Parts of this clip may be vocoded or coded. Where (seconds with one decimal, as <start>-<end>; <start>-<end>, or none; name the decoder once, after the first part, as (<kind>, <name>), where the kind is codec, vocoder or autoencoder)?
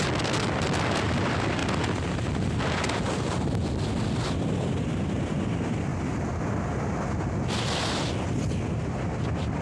0.0-1.6 (vocoder, BigVGAN v2); 4.0-5.9; 8.4-9.6